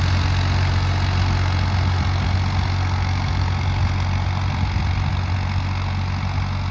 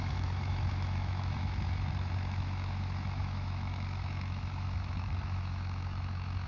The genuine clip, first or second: first